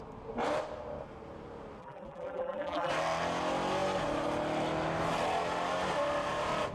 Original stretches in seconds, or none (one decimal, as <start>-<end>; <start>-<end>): 0.0-1.8; 2.9-6.7